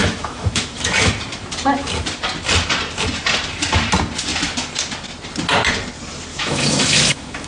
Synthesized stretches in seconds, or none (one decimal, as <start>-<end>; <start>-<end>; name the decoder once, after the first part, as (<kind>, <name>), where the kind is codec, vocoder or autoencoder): 0.0-1.1 (autoencoder, DAC-VAE); 6.3-7.5